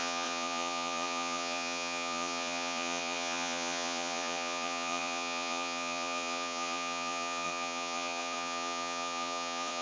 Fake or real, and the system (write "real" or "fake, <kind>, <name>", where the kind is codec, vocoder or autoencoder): fake, vocoder, Vocos